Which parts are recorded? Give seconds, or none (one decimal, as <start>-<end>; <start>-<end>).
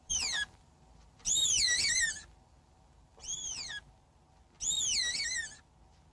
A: 3.7-6.1